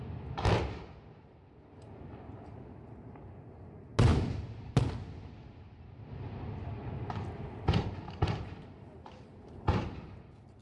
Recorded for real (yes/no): yes